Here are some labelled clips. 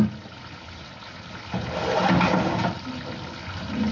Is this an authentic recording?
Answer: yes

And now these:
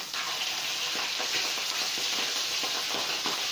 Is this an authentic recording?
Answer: yes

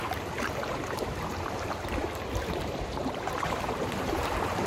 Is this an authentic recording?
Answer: no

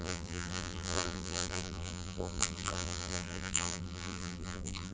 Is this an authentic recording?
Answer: no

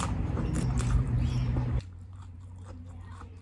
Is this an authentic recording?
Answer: no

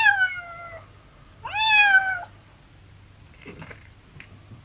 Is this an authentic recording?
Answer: yes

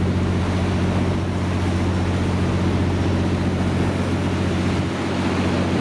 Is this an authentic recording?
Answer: yes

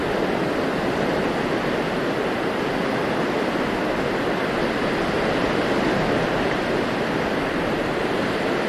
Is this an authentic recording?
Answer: yes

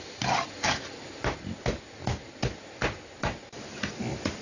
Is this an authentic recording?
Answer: yes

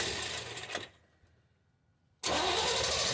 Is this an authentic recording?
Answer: yes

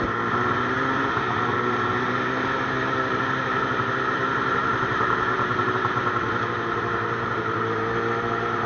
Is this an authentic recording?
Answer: no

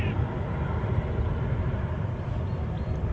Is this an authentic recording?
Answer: no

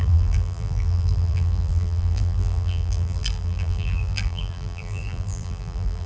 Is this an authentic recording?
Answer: no